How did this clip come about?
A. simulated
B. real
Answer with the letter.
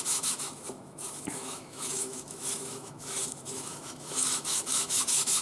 A